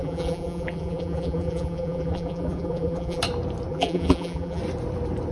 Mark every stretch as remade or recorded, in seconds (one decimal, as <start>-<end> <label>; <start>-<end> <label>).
0.0-3.2 remade; 3.2-3.7 recorded; 3.7-4.6 remade; 4.6-5.3 recorded